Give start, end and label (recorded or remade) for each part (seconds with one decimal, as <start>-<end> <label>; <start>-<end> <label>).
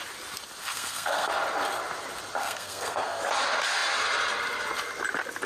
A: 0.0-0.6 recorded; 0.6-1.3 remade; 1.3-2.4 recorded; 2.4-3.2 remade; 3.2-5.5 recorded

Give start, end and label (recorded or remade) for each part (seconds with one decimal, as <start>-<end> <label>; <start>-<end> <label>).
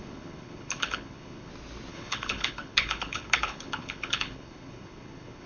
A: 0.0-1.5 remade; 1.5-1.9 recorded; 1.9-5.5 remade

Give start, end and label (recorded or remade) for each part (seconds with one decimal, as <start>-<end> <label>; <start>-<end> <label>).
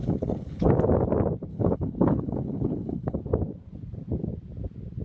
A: 0.0-0.7 remade; 0.7-1.5 recorded; 1.5-3.2 remade; 3.2-5.0 recorded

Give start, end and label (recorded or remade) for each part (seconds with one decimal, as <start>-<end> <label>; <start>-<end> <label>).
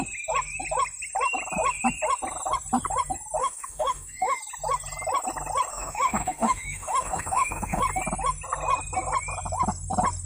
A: 0.0-3.4 recorded; 3.4-4.4 remade; 4.4-5.7 recorded; 5.7-7.8 remade; 7.8-10.3 recorded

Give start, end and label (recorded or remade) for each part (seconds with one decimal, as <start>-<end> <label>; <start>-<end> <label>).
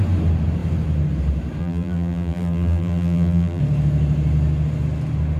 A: 0.0-1.6 recorded; 1.6-3.6 remade; 3.6-5.4 recorded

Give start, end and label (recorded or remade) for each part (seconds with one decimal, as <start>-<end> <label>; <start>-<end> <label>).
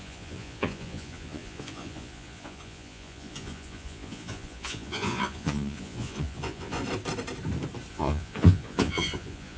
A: 0.0-6.8 remade; 6.8-7.9 recorded; 7.9-9.6 remade